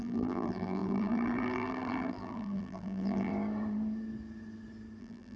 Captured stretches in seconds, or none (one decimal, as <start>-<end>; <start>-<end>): 3.3-5.0